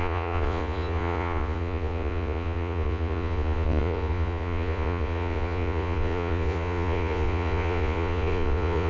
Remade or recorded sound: remade